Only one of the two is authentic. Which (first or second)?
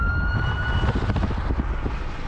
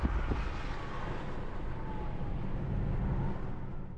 second